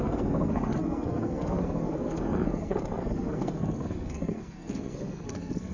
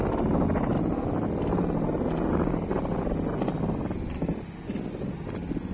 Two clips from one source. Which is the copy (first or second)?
first